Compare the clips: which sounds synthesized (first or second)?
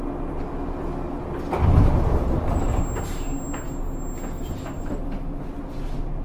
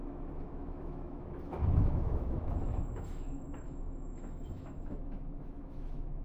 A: second